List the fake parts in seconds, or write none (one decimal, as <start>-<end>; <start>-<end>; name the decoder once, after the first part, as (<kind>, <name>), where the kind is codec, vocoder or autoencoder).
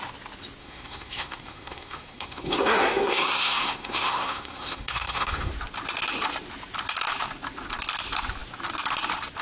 0.6-5.5 (codec, SNAC)